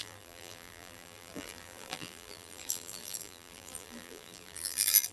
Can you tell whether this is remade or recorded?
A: remade